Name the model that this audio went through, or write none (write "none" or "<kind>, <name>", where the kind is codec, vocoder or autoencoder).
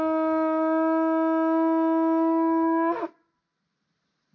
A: none